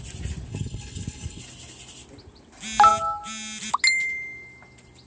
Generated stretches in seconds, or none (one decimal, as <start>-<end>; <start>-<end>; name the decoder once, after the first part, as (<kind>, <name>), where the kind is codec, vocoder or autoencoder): 0.5-1.4 (codec, HILCodec)